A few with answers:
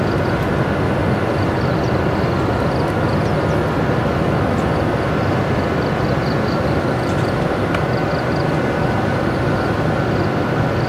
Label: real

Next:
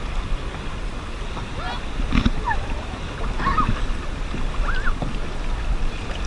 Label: real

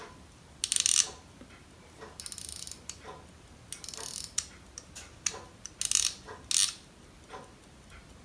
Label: real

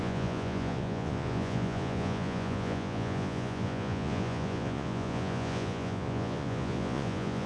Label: fake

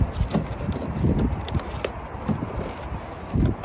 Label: real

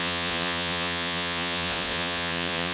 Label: fake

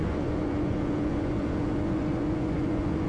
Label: fake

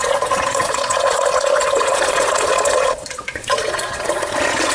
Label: fake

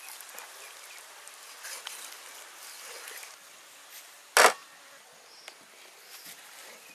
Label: real